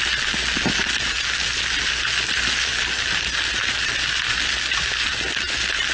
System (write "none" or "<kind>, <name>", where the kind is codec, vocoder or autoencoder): none